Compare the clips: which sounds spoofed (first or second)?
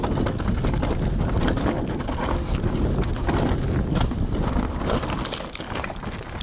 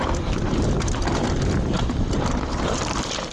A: second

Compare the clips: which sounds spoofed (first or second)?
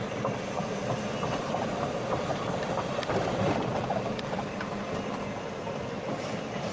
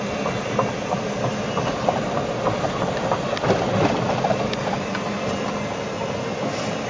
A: first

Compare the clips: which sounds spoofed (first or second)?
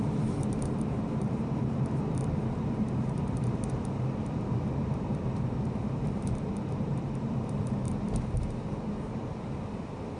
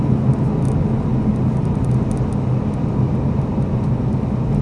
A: first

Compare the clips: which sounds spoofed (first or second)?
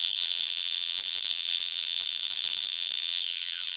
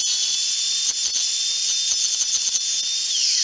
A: first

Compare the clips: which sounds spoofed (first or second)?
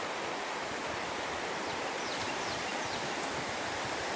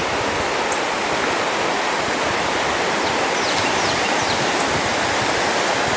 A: first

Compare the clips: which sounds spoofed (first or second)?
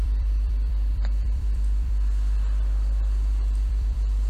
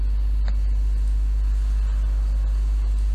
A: first